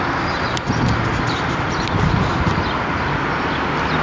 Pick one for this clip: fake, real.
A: real